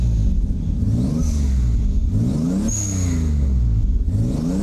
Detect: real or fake real